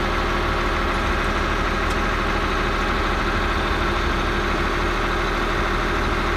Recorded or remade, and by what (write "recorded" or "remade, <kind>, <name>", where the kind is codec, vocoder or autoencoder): recorded